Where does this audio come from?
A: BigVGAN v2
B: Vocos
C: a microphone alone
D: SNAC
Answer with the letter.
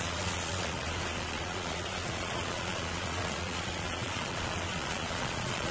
B